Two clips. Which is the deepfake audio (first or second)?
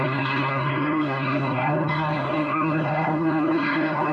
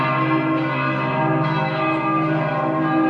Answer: first